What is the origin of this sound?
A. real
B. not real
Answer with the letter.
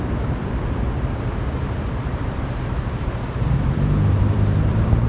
B